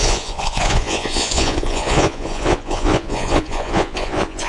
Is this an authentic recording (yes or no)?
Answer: no